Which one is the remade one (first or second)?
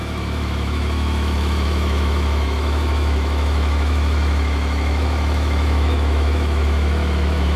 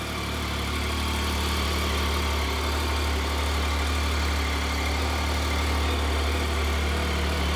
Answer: first